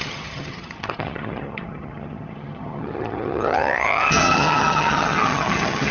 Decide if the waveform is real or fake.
fake